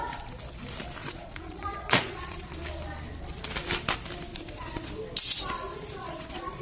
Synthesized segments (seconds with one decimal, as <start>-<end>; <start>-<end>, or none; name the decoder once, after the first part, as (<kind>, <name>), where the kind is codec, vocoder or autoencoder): 1.0-2.5 (vocoder, Vocos); 4.3-4.9; 5.7-6.6